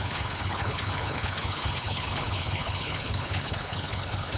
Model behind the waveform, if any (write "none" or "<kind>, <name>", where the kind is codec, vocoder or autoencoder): codec, HILCodec